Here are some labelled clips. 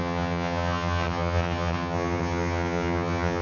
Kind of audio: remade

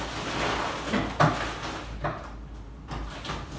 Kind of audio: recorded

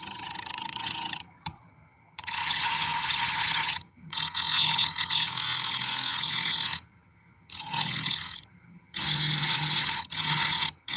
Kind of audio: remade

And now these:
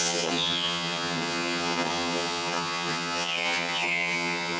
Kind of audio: remade